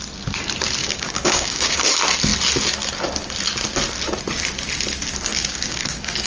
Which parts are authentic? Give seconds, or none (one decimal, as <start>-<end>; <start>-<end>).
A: 0.0-0.8; 1.9-5.3